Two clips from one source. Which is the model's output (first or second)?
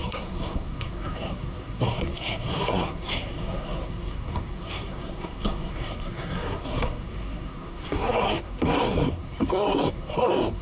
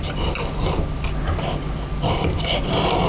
first